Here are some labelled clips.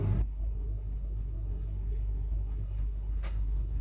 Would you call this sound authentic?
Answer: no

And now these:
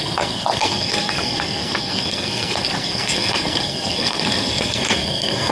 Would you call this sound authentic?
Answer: no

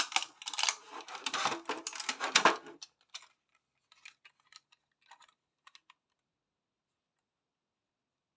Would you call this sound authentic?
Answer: yes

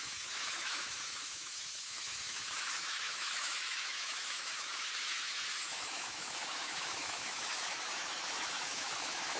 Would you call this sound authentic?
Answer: no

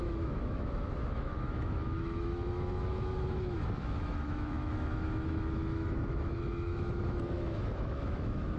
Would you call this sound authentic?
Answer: no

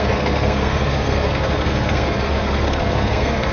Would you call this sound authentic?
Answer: no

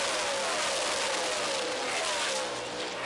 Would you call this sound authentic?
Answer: yes